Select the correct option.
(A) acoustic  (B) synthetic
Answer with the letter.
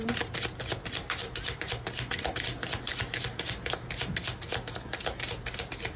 A